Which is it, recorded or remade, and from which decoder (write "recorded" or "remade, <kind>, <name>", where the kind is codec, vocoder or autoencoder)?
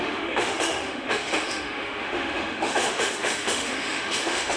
remade, autoencoder, DAC-VAE